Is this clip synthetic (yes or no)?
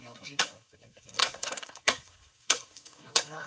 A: yes